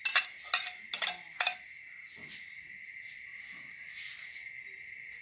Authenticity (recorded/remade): recorded